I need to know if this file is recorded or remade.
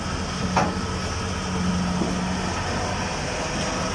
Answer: recorded